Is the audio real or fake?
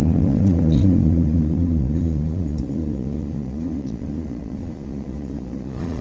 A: fake